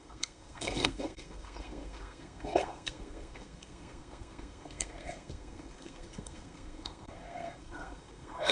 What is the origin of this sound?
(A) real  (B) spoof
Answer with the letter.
B